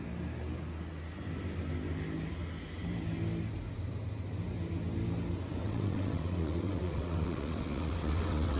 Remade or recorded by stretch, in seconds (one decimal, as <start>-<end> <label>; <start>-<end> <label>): 0.0-5.6 recorded; 5.6-8.6 remade